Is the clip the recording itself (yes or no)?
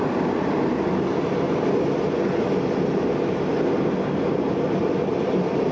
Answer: yes